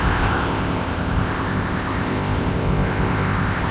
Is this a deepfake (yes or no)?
yes